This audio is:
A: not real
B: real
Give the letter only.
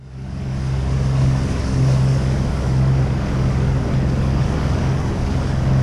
A